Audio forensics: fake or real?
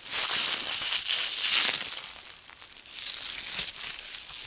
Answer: real